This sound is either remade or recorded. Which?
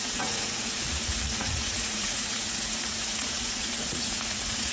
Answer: remade